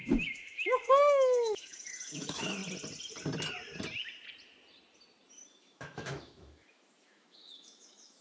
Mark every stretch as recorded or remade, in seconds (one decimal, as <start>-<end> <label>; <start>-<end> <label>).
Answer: 0.0-2.6 remade; 2.6-5.5 recorded; 5.5-8.2 remade